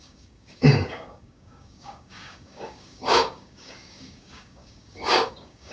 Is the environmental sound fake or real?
fake